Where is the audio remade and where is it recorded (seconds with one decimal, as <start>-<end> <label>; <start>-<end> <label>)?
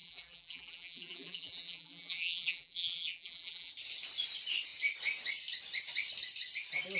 0.0-3.7 remade; 3.7-7.0 recorded